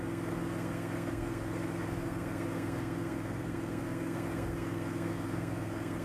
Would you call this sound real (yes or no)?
no